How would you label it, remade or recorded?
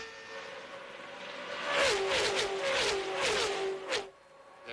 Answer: recorded